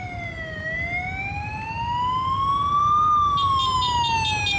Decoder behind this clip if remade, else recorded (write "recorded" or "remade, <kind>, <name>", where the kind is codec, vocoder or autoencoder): recorded